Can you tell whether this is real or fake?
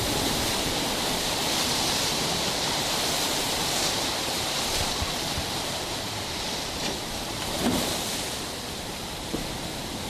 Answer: fake